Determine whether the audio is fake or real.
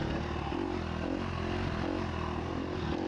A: real